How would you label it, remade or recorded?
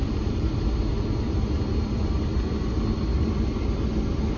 recorded